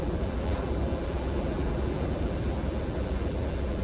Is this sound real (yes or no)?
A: no